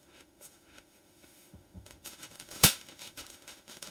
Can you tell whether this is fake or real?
fake